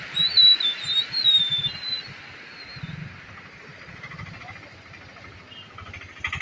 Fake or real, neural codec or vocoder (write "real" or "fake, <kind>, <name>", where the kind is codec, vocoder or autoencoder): real